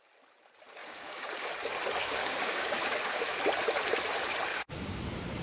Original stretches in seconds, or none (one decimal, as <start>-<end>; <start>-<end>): 0.0-0.8; 1.5-2.0; 3.4-4.5; 5.0-5.4